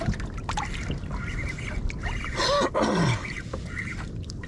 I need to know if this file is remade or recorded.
recorded